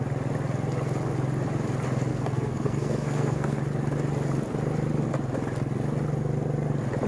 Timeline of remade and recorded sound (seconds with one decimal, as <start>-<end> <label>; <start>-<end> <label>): 0.0-2.1 recorded; 2.1-3.6 remade; 3.6-7.1 recorded